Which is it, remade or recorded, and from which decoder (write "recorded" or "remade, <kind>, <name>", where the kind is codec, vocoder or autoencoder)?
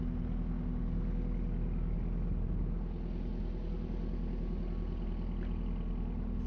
recorded